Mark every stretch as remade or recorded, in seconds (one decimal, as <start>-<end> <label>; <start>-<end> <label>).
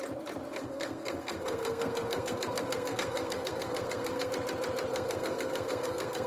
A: 0.0-0.5 recorded; 0.5-4.3 remade; 4.3-4.9 recorded; 4.9-6.3 remade